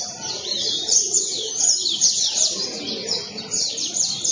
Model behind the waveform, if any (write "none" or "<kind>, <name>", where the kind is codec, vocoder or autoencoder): vocoder, BigVGAN v2